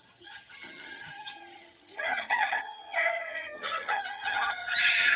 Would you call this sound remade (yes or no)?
yes